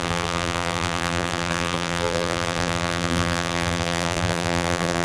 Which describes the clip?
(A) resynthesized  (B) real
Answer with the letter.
A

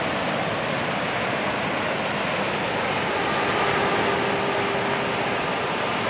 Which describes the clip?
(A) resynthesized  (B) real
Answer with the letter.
B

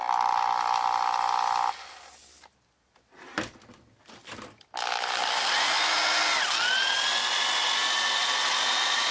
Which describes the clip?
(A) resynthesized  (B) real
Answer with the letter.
B